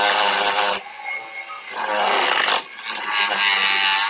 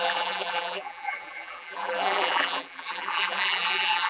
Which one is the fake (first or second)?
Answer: second